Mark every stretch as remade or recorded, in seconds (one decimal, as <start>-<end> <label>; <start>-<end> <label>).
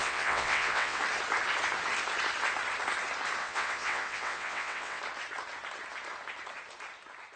0.0-1.0 remade; 1.0-3.4 recorded; 3.4-5.0 remade; 5.0-7.4 recorded